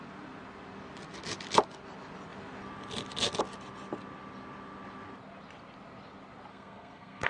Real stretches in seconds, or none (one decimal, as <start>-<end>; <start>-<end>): 0.0-6.5